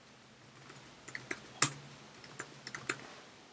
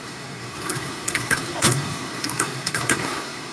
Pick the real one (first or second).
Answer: first